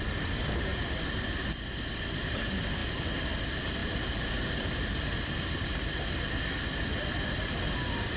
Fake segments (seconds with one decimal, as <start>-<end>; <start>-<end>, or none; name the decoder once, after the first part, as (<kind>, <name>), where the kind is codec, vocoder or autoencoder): 0.7-1.8 (vocoder, BigVGAN v2); 2.8-3.4; 3.8-8.2